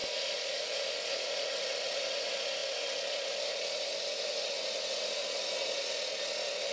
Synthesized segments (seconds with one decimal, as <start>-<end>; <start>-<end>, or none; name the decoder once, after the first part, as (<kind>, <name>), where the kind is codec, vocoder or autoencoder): none